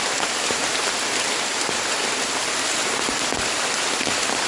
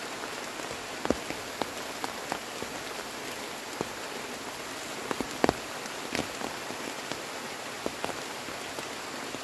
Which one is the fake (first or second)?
first